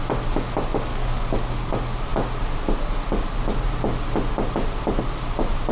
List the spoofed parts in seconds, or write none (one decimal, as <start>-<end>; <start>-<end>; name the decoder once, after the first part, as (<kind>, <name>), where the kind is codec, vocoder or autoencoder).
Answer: 0.9-1.7 (codec, DAC)